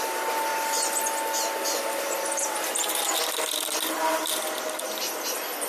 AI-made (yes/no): yes